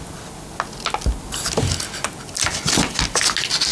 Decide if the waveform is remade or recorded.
recorded